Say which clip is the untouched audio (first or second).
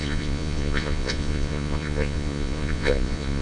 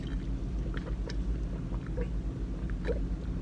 second